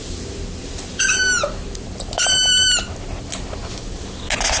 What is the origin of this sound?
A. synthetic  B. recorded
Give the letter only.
B